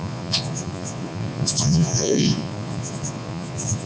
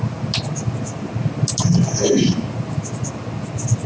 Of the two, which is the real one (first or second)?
second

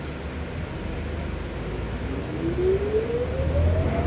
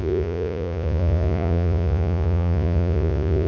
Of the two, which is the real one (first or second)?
first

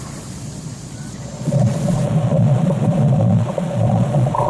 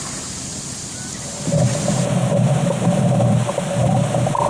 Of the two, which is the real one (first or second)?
second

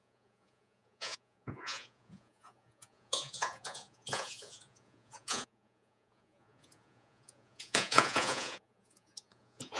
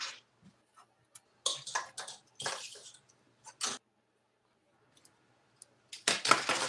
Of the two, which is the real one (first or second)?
second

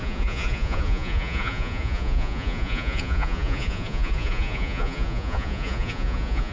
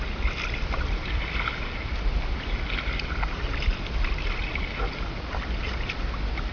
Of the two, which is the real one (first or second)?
second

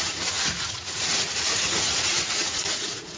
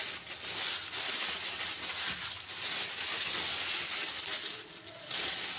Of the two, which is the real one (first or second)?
second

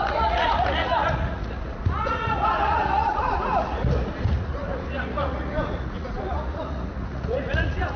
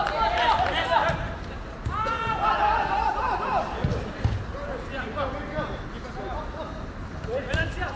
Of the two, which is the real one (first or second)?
second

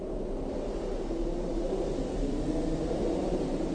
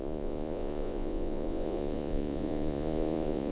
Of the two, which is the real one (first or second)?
first